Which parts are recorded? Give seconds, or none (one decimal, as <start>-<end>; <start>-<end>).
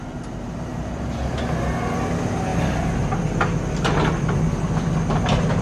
1.3-5.6